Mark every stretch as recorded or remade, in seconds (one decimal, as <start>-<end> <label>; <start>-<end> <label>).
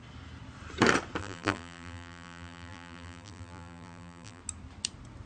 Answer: 0.0-1.2 recorded; 1.2-4.4 remade; 4.4-5.3 recorded